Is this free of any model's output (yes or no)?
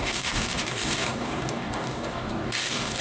no